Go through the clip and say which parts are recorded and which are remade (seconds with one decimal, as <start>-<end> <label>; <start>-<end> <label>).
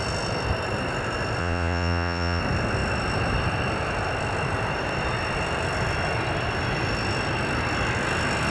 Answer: 0.0-1.4 recorded; 1.4-2.4 remade; 2.4-8.5 recorded